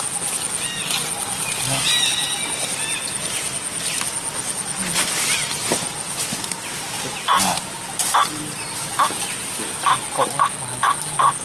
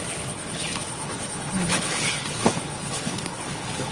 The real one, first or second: first